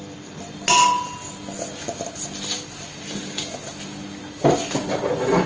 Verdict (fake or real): real